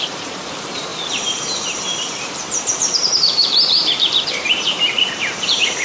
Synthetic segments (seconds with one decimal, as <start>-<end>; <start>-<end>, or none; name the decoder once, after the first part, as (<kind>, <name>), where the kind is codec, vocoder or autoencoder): 0.0-5.8 (vocoder, BigVGAN v2)